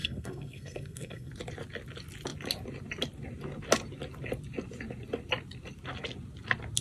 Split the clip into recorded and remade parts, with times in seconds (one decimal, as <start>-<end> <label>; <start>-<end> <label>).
0.0-1.3 remade; 1.3-6.8 recorded